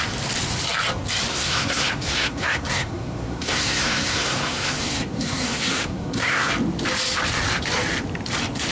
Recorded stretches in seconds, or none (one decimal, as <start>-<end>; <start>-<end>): 0.0-1.3; 6.5-8.7

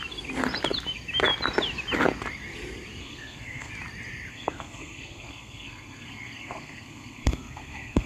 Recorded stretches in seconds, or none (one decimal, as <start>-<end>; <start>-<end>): 0.0-3.0; 3.7-4.3

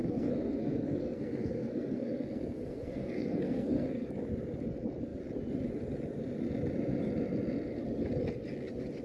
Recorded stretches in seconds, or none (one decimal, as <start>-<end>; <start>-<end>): 4.1-9.0

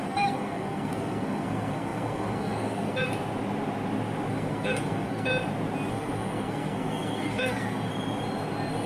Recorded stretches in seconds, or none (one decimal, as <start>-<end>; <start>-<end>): 3.1-4.3; 5.3-5.9; 7.9-8.9

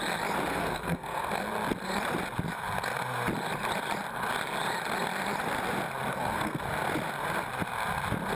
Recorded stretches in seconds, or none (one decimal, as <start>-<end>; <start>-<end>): 0.0-0.5; 1.3-6.1; 6.6-8.3

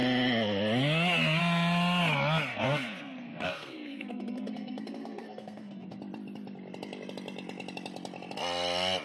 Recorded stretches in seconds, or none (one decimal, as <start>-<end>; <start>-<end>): 0.0-2.5; 6.0-9.0